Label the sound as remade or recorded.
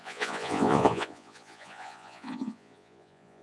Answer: remade